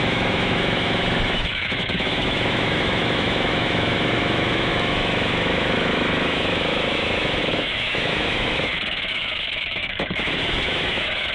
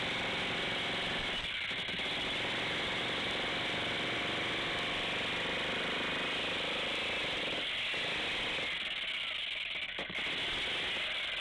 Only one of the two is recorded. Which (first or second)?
second